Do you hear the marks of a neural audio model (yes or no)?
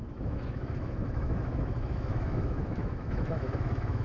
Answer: yes